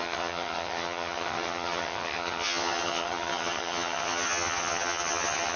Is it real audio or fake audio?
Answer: fake